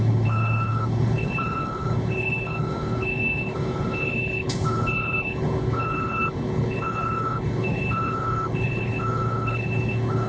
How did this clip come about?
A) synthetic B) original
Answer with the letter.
A